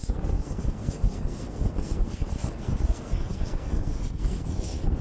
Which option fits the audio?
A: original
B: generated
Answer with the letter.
B